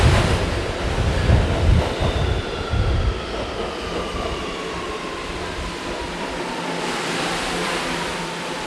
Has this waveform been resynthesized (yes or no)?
no